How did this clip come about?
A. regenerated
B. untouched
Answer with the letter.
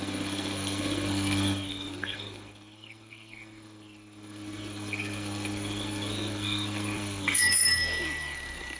A